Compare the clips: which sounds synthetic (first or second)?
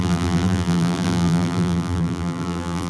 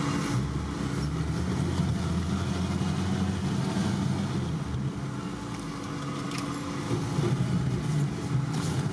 first